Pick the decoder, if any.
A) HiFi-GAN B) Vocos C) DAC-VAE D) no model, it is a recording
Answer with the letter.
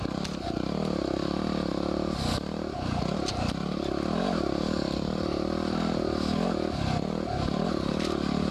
D